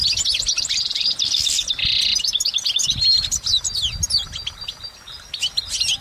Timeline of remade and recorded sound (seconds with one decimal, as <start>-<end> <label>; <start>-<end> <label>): 0.0-6.0 recorded